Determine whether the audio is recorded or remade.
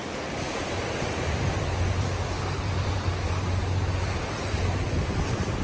remade